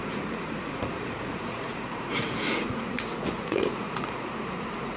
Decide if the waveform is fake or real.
fake